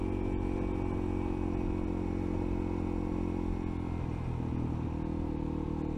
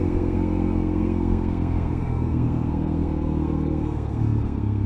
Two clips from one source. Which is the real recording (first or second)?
first